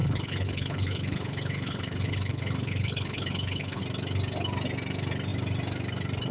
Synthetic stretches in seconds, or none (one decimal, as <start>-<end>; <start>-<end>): 0.0-3.8